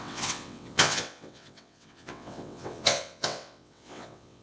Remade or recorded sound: remade